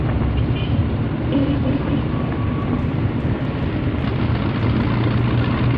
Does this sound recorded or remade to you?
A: recorded